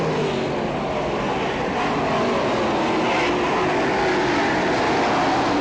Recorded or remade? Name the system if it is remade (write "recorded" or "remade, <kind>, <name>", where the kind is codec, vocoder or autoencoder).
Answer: recorded